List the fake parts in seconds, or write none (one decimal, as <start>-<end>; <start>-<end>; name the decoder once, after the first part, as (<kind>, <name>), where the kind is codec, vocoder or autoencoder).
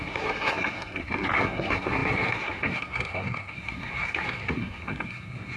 0.0-5.6 (codec, SNAC)